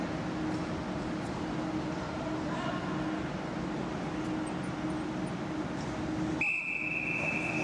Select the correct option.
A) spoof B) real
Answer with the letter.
B